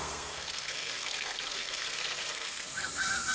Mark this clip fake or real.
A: fake